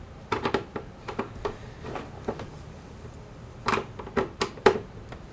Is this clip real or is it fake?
fake